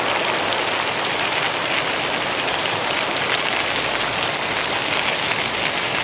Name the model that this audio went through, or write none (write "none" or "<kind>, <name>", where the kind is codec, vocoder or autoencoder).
none